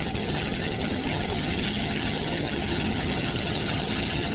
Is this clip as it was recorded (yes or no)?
no